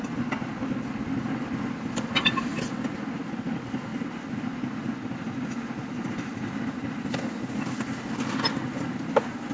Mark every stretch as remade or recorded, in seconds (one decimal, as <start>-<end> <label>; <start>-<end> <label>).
0.0-9.5 recorded